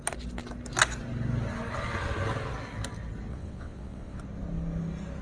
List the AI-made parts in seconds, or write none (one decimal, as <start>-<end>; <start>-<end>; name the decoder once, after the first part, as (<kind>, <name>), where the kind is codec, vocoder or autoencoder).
3.3-4.2 (vocoder, WaveNeXt)